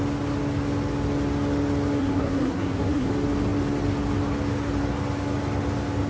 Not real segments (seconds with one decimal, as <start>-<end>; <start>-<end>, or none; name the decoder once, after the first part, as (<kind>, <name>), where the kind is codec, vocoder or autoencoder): 2.0-3.1 (codec, SNAC)